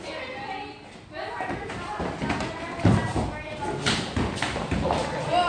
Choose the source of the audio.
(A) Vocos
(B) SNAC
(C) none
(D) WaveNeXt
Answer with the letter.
C